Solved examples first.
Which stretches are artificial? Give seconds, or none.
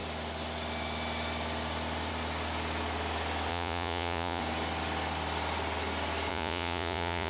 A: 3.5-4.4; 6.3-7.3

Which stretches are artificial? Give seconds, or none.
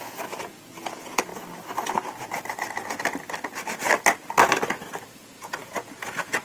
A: 0.0-1.3; 5.1-6.4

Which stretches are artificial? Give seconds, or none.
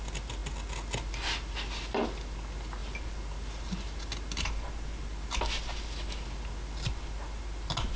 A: none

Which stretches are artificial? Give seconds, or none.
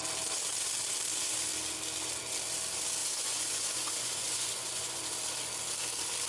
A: 3.0-5.0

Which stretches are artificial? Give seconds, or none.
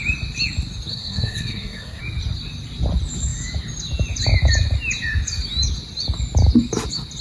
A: 0.9-2.0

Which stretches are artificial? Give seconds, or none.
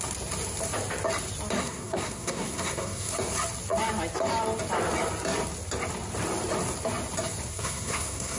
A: 1.6-3.1; 7.5-8.4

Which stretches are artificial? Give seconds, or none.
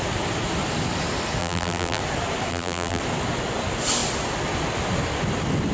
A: 1.4-2.0; 2.5-3.0